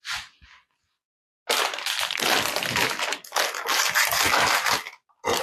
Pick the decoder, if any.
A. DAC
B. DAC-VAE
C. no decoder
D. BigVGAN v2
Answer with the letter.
C